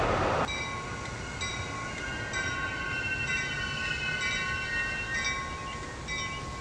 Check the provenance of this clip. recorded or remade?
recorded